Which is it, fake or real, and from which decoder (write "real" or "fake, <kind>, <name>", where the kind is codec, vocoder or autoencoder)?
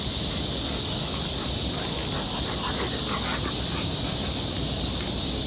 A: real